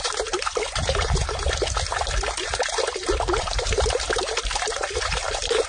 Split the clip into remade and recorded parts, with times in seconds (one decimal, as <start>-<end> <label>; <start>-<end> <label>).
0.0-1.2 remade; 1.2-3.4 recorded; 3.4-5.7 remade